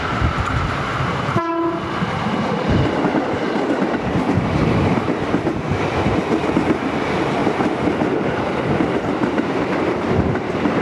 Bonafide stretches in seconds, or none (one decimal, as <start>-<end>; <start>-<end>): 0.0-0.9; 1.5-10.8